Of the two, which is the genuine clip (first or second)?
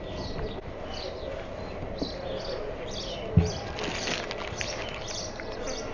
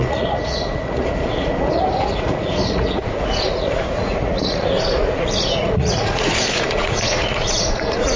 first